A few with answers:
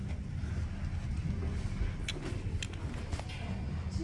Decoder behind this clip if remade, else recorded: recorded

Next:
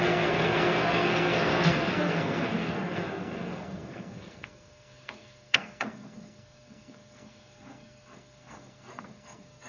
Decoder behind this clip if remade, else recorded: remade, codec, SNAC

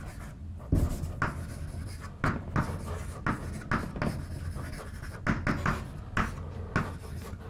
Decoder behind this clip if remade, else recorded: recorded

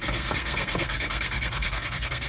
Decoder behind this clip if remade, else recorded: remade, codec, SNAC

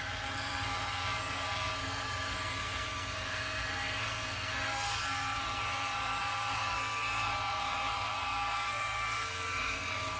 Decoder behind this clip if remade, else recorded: remade, codec, SNAC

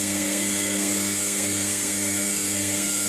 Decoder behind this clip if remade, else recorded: remade, codec, SNAC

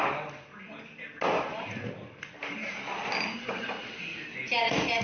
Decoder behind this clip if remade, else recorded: recorded